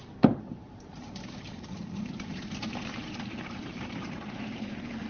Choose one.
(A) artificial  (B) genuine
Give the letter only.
A